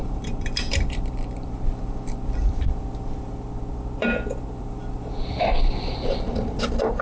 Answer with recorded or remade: remade